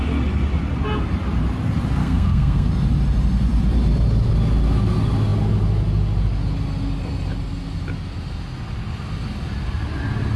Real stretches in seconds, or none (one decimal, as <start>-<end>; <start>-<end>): 0.0-2.0; 2.7-10.4